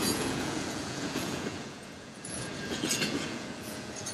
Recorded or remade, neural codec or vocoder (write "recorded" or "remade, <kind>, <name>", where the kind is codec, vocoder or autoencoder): remade, vocoder, Vocos